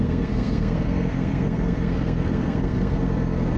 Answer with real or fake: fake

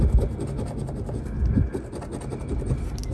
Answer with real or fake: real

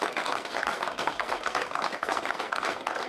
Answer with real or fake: fake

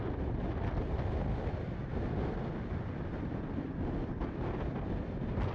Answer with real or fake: real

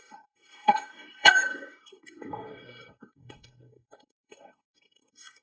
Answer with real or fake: fake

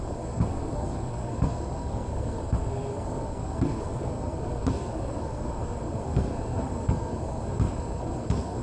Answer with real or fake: fake